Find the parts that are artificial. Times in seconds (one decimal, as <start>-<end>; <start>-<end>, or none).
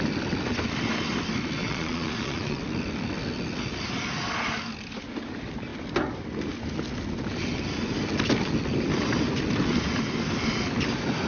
1.6-2.6